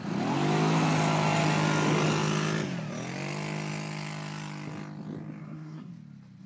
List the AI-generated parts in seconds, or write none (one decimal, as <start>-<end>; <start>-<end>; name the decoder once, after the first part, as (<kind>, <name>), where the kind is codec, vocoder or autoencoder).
5.4-5.9 (codec, SNAC)